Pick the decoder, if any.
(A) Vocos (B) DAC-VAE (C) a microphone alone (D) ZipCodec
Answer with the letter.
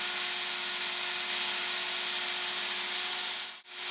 C